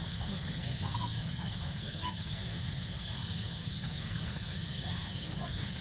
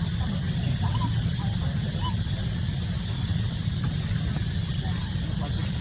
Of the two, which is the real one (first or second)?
second